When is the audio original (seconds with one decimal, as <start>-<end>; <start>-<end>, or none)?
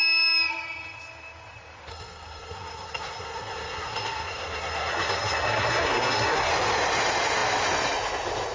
0.0-1.9; 6.5-8.5